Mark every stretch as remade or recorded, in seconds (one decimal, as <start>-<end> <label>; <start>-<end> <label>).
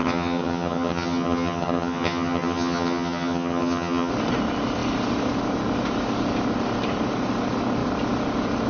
0.0-4.1 remade; 4.1-8.7 recorded